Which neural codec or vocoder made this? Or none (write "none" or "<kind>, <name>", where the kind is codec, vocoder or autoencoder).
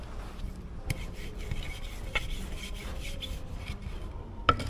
none